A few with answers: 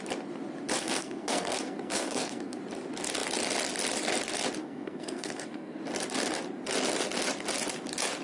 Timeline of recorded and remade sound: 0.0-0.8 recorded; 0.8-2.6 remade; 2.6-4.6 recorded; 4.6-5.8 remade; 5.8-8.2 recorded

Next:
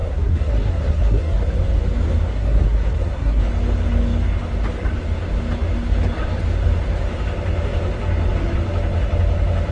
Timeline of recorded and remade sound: 0.0-1.5 remade; 1.5-2.3 recorded; 2.3-3.4 remade; 3.4-9.7 recorded

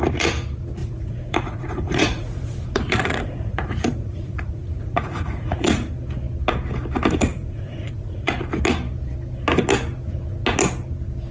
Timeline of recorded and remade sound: 0.0-0.8 recorded; 0.8-5.9 remade; 5.9-7.3 recorded; 7.3-8.3 remade; 8.3-11.3 recorded

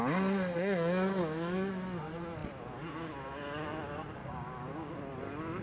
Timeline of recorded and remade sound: 0.0-1.2 recorded; 1.2-1.7 remade; 1.7-4.2 recorded; 4.2-4.9 remade; 4.9-5.6 recorded